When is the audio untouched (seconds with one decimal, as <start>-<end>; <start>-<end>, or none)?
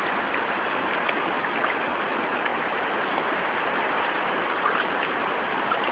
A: 0.0-5.9